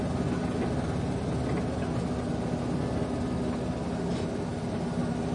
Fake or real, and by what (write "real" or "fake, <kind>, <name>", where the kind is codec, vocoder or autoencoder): real